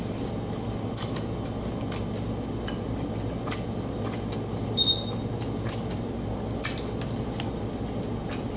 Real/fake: real